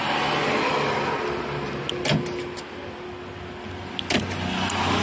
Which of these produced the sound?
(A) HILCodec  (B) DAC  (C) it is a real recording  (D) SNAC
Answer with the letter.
C